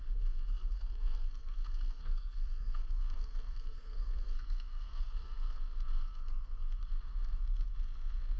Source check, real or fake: fake